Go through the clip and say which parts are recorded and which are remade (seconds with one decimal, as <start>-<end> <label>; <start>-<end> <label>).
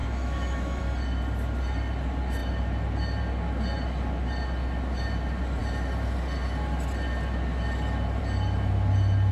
0.0-0.8 remade; 0.8-9.3 recorded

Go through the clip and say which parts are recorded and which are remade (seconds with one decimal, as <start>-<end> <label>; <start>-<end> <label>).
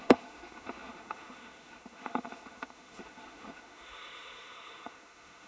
0.0-5.5 remade